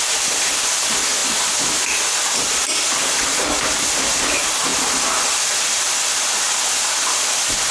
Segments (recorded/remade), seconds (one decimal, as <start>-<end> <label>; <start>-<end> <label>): 0.0-7.7 recorded